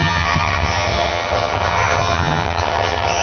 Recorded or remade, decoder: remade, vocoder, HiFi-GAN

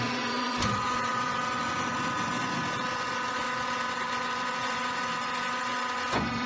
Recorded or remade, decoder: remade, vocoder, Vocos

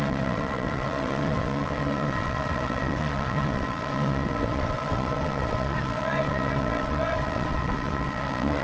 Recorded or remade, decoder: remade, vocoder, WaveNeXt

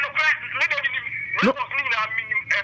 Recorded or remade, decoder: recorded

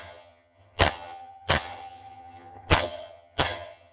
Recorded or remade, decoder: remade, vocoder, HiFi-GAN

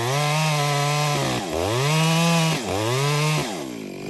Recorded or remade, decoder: recorded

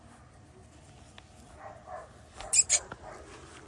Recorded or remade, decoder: recorded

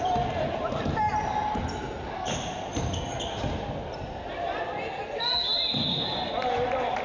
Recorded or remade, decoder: recorded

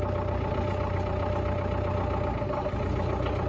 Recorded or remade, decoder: recorded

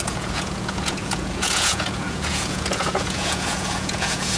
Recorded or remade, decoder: remade, vocoder, Vocos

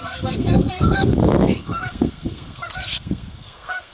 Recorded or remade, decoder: remade, codec, SNAC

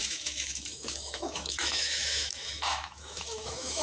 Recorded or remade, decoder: remade, autoencoder, DAC-VAE